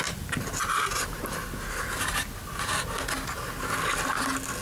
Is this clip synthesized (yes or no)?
no